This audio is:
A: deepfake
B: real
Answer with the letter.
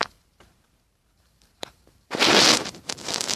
A